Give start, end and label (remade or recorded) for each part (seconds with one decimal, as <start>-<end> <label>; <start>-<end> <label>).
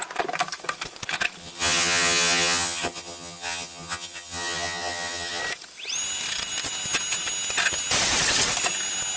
0.0-1.4 recorded; 1.4-5.4 remade; 5.4-9.2 recorded